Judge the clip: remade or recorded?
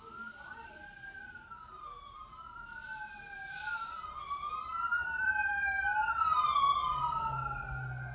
recorded